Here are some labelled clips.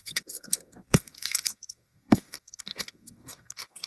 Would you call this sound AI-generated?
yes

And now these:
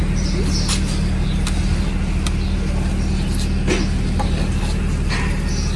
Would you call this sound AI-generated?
no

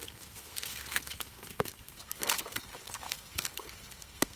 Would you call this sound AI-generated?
yes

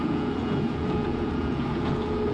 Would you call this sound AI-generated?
yes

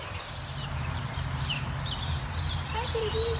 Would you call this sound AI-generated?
yes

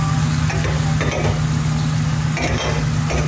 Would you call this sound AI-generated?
no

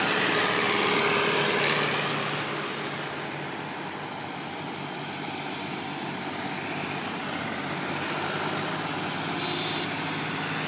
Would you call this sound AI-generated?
no